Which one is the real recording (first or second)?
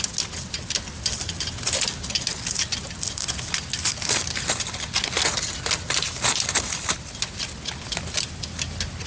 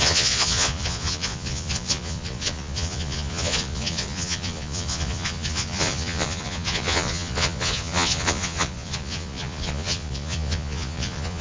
first